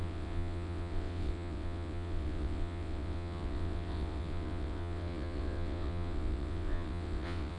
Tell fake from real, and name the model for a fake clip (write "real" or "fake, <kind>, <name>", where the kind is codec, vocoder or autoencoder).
fake, vocoder, WaveNeXt